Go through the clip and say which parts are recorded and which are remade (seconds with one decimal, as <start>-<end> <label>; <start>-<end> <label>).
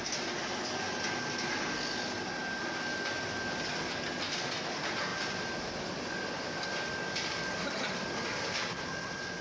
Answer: 0.0-5.1 recorded; 5.1-9.4 remade